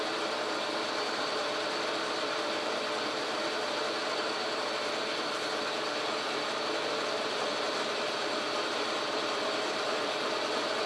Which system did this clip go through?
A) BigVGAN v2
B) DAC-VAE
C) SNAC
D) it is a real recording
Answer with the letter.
A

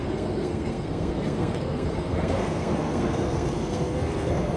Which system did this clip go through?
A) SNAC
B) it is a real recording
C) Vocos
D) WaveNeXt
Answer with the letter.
A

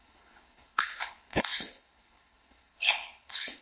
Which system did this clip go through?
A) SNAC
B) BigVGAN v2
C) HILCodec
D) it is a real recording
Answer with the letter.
C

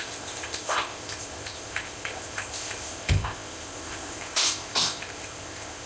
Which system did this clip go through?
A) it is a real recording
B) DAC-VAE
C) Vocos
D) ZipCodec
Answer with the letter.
D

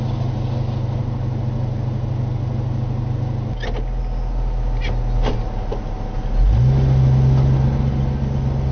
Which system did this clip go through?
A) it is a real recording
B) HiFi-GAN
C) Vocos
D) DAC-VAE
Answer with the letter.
A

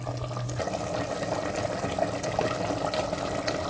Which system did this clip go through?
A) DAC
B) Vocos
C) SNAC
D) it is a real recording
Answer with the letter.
D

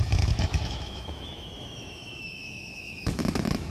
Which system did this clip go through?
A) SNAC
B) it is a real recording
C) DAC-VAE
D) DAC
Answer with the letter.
C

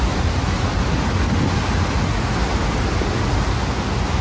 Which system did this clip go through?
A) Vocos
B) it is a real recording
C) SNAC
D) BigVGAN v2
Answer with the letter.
B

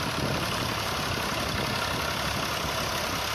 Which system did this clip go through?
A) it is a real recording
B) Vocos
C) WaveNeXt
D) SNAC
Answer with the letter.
A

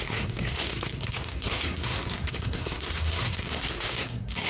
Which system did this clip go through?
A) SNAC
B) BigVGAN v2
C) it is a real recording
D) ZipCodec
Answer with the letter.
A